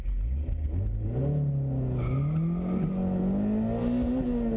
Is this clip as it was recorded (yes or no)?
yes